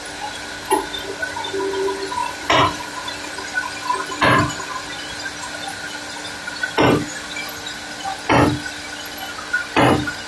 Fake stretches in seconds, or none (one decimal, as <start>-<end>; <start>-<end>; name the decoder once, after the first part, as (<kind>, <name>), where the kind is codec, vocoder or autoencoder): 2.2-3.3 (vocoder, BigVGAN v2)